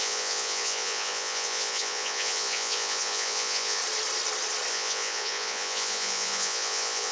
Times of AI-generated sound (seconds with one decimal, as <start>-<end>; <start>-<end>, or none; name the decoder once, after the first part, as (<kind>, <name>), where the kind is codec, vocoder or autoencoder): 0.0-3.8 (vocoder, Vocos); 4.7-7.1